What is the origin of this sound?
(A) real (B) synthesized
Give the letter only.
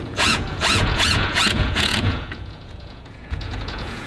B